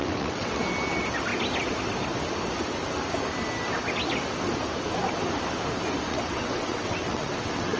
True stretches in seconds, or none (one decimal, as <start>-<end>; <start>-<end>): 0.6-6.1